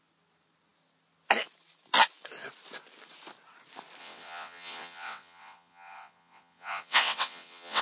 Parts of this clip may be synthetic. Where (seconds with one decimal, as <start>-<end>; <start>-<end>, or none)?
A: 4.0-7.8